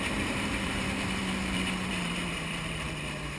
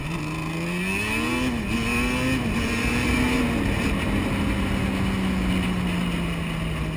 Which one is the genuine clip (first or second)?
second